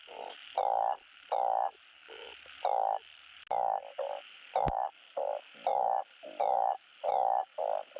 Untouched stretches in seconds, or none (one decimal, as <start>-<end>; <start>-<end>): 0.0-8.0